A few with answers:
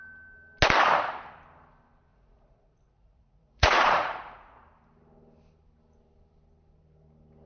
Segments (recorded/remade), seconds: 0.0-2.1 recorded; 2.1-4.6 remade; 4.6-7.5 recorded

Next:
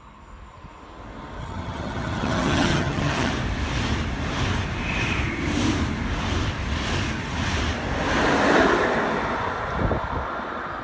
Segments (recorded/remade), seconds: 0.0-1.4 recorded; 1.4-3.3 remade; 3.3-10.8 recorded

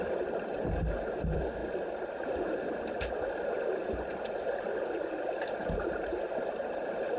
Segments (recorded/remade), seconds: 0.0-7.2 recorded

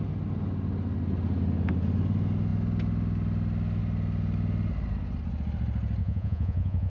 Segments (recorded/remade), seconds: 0.0-6.0 recorded; 6.0-6.9 remade